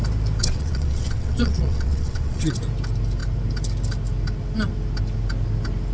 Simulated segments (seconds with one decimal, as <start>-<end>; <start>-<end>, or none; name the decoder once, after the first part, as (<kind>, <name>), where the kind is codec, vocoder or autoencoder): 0.4-2.6 (vocoder, WaveNeXt)